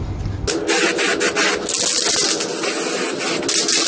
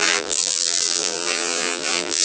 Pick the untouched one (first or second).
first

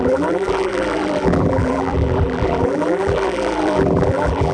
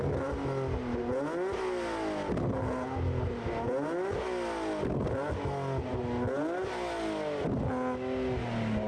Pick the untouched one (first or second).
second